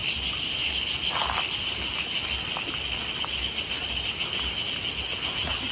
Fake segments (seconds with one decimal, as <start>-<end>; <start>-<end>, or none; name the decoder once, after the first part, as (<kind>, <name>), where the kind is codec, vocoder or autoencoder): none